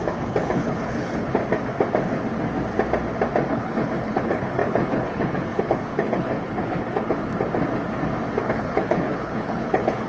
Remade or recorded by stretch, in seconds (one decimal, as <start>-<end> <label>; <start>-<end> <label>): 0.0-1.4 remade; 1.4-3.5 recorded; 3.5-7.3 remade; 7.3-8.4 recorded; 8.4-10.1 remade